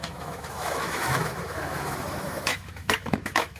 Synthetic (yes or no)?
yes